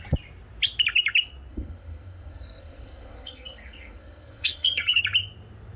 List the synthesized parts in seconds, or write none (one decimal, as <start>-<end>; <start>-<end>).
1.5-5.0